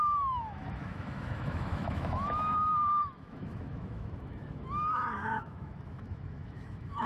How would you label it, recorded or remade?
remade